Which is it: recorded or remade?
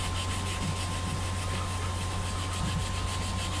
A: recorded